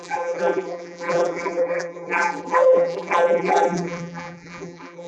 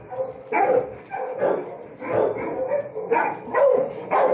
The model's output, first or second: first